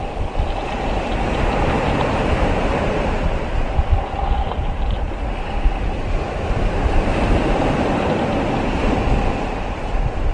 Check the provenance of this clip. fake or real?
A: real